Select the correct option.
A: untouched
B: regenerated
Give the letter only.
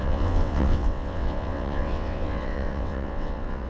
B